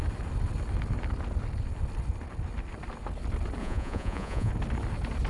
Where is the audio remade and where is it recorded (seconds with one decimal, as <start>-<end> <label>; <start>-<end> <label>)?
0.0-3.6 recorded; 3.6-4.5 remade; 4.5-5.3 recorded